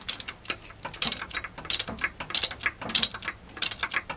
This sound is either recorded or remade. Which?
recorded